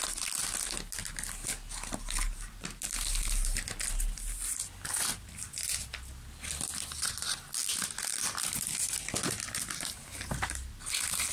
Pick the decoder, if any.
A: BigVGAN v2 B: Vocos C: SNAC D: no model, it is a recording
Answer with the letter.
D